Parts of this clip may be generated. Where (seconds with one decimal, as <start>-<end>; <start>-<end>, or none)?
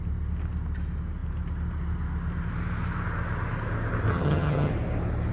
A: 4.1-4.7